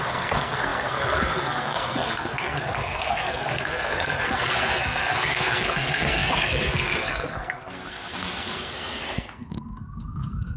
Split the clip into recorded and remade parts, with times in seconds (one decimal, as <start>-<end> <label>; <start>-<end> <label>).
0.0-10.6 remade